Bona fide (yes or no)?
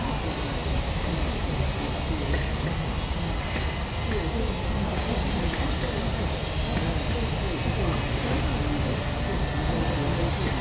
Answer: yes